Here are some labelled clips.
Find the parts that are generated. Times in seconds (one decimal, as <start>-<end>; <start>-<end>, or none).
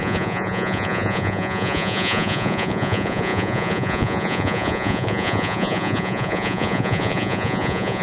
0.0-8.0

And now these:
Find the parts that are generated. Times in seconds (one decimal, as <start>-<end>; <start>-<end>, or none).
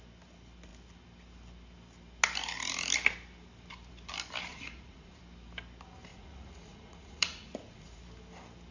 4.5-5.2; 6.1-8.0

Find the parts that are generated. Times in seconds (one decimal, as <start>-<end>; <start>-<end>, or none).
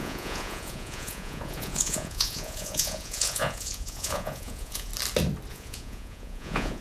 0.0-4.9; 5.5-6.8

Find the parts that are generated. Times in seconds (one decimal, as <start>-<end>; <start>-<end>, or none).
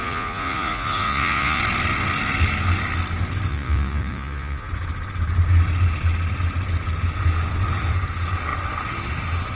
0.0-1.6; 3.5-4.7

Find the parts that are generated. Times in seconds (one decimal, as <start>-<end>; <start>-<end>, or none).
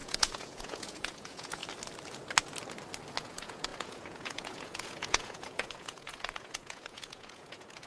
0.0-1.6; 3.2-7.9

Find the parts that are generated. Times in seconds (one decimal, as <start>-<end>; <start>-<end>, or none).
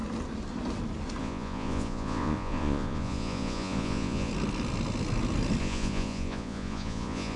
1.2-4.3; 5.6-7.4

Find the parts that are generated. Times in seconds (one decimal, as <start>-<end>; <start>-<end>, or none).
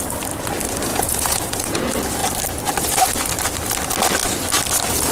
0.9-1.8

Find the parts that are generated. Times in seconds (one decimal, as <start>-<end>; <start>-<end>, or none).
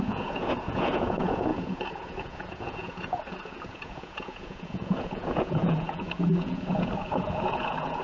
0.0-8.0